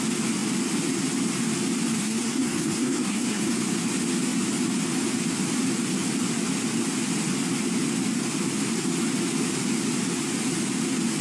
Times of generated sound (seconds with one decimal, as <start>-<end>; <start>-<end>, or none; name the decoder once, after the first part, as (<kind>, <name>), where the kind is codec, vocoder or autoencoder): 2.0-3.6 (codec, SNAC)